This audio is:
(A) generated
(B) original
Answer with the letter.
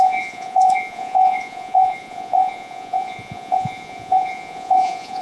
A